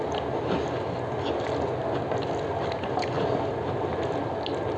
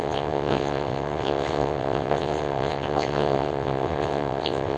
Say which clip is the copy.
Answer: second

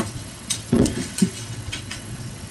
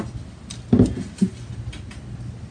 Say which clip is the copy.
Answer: first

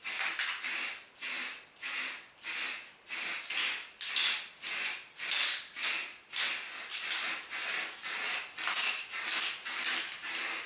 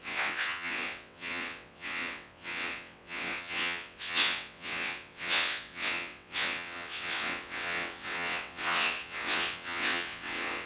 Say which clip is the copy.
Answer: second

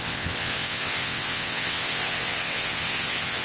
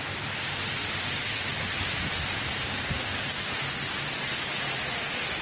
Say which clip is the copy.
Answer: first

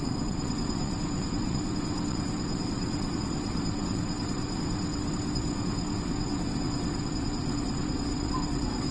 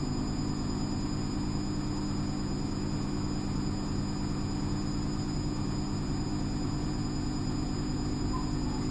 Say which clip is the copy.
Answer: first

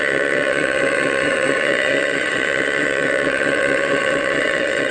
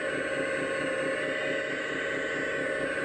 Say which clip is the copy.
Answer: first